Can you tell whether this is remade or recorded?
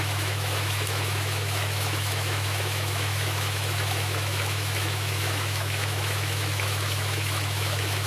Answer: remade